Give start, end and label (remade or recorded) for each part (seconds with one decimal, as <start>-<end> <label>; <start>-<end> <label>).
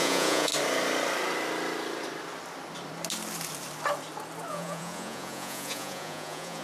0.0-0.5 remade; 0.5-4.5 recorded; 4.5-6.6 remade